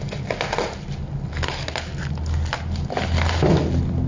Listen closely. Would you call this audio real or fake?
real